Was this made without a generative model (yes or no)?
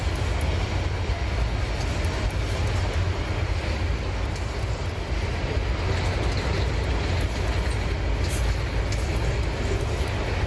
yes